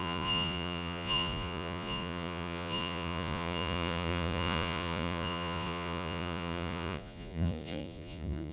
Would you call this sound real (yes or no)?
no